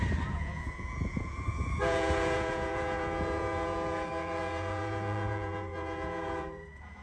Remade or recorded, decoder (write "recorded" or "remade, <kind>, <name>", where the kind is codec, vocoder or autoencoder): remade, vocoder, Vocos